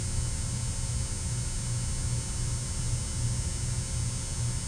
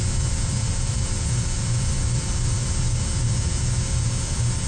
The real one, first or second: first